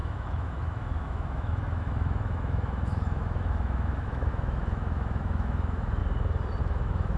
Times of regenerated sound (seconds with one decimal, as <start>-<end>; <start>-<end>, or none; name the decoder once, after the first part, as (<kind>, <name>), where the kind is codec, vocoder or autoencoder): 0.0-6.0 (autoencoder, DAC-VAE); 6.6-7.2